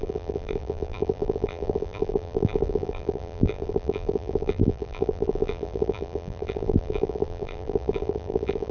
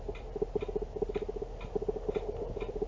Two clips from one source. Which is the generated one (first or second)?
first